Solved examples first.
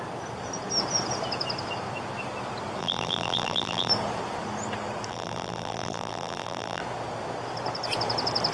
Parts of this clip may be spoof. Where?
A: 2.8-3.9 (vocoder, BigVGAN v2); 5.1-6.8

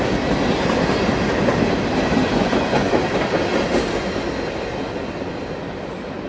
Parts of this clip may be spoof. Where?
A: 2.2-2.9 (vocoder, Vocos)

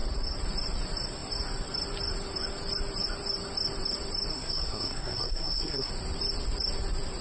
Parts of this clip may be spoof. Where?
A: 4.3-5.9 (codec, SNAC)

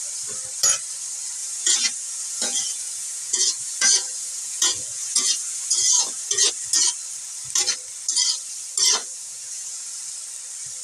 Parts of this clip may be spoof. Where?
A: 1.4-6.5 (vocoder, Vocos); 9.0-10.0

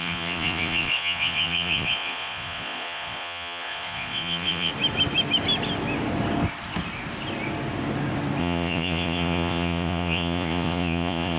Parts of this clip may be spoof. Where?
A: 0.0-4.7 (vocoder, Vocos); 8.4-11.4

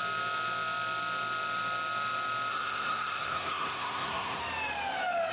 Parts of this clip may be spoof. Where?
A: 2.5-4.4 (codec, SNAC)

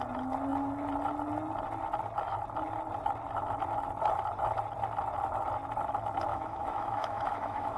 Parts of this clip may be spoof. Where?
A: 6.3-7.8 (autoencoder, DAC-VAE)